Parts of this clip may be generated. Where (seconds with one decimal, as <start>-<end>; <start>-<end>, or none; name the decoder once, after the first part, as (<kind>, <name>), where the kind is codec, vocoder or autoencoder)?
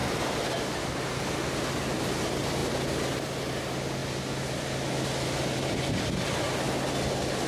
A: none